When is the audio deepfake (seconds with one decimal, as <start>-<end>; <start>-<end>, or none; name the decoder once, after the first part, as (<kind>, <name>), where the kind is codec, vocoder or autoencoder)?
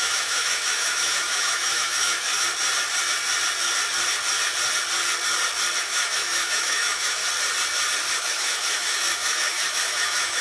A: 0.0-2.3 (autoencoder, DAC-VAE); 5.8-7.2; 8.2-10.4